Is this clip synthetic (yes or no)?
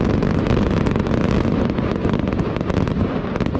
no